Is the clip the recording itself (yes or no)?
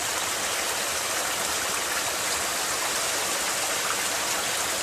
yes